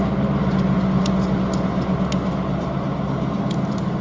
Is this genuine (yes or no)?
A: yes